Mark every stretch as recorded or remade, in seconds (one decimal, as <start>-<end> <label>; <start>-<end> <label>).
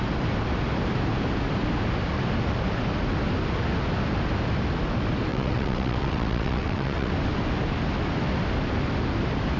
0.0-5.3 recorded; 5.3-7.1 remade; 7.1-9.6 recorded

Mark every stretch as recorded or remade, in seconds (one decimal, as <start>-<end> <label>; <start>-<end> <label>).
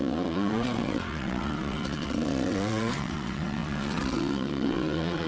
0.0-5.3 remade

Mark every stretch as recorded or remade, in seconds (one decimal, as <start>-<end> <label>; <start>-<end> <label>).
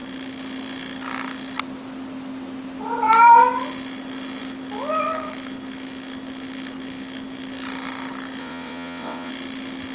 0.0-8.4 recorded; 8.4-9.3 remade; 9.3-9.9 recorded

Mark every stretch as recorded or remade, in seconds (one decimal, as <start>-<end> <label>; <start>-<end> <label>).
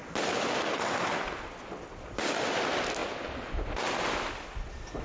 0.0-5.0 recorded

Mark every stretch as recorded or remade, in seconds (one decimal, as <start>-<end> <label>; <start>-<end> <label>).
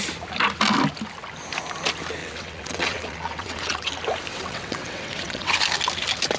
0.0-2.2 recorded; 2.2-3.9 remade; 3.9-4.3 recorded; 4.3-5.5 remade; 5.5-6.4 recorded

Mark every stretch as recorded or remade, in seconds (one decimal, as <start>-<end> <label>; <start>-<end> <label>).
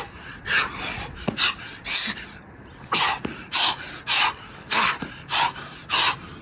0.0-6.4 recorded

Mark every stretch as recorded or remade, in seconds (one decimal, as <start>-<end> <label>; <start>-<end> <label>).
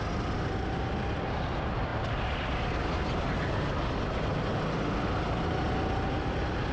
0.0-6.7 recorded